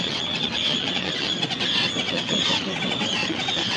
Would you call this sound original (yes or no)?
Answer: no